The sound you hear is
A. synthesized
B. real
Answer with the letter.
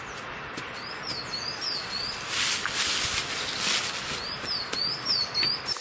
B